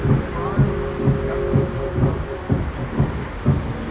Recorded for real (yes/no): yes